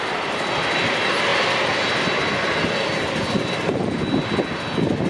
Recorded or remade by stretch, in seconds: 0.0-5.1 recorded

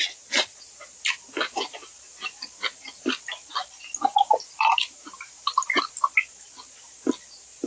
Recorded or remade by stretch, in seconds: 0.0-7.7 recorded

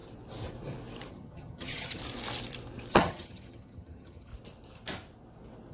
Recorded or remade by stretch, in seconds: 0.0-1.1 recorded; 1.1-2.0 remade; 2.0-2.9 recorded; 2.9-4.3 remade; 4.3-5.7 recorded